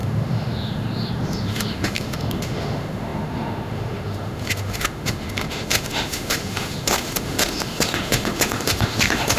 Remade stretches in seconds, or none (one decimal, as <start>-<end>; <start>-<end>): 0.0-9.4